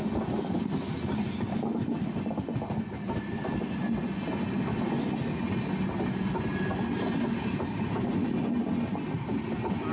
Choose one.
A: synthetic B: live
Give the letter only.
B